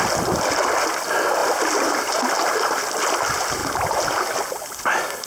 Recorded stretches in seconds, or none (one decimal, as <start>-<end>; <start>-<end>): 0.0-1.4; 2.6-5.3